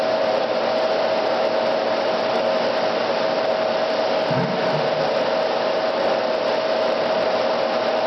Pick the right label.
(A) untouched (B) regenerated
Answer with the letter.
A